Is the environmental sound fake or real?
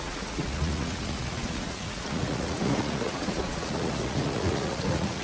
fake